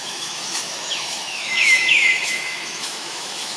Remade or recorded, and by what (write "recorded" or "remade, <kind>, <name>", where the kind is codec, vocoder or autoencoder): remade, autoencoder, DAC-VAE